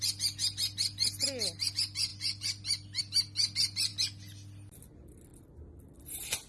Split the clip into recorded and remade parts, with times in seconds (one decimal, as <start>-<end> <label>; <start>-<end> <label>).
0.0-6.5 recorded